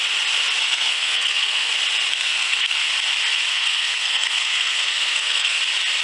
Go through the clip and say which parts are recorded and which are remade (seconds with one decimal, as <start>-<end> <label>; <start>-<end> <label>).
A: 0.0-0.6 recorded; 0.6-1.7 remade; 1.7-2.1 recorded; 2.1-2.9 remade; 2.9-3.5 recorded; 3.5-5.6 remade; 5.6-6.0 recorded